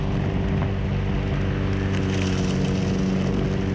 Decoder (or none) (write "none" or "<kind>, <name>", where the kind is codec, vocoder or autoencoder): none